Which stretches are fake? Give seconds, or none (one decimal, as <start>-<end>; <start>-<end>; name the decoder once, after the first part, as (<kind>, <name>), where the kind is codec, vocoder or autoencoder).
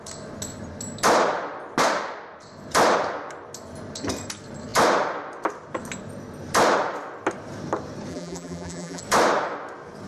8.1-9.0 (vocoder, BigVGAN v2)